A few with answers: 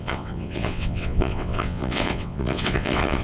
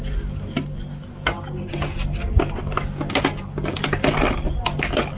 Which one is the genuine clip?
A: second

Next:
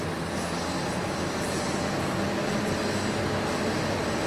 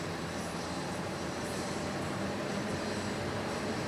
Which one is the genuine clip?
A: first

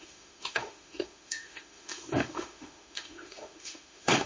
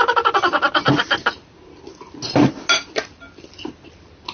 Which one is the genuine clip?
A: second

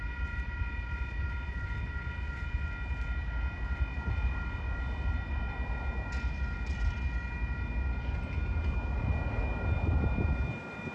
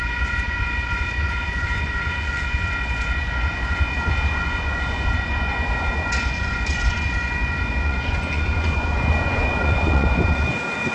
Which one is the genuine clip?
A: first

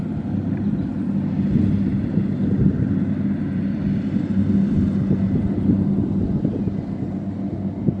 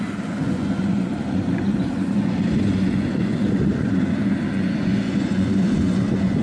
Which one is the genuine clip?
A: first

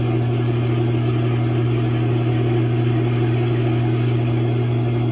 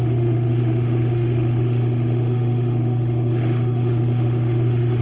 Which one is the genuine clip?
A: first